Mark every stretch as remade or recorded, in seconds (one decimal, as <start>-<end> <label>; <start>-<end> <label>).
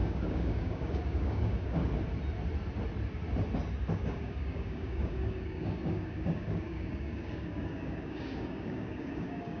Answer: 0.0-1.8 remade; 1.8-3.9 recorded; 3.9-9.6 remade